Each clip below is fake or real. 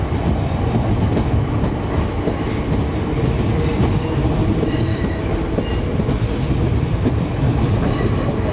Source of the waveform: real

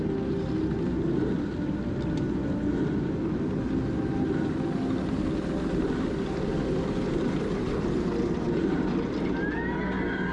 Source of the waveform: real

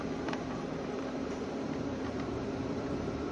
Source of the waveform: fake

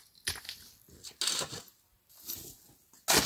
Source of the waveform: real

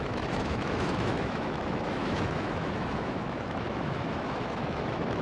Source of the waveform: fake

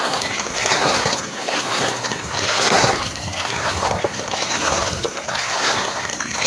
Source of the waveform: fake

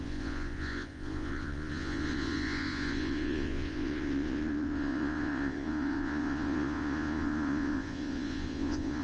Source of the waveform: fake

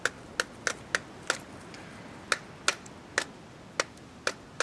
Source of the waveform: real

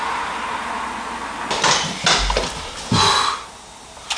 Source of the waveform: real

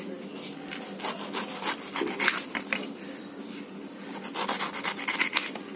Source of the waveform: real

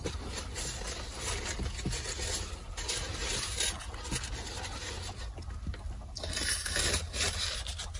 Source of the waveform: real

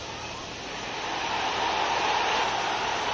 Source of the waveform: real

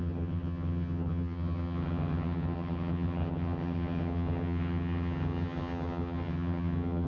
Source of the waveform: fake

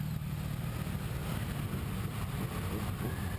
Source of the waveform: real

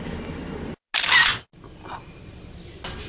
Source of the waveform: real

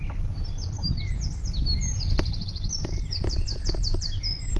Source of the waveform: real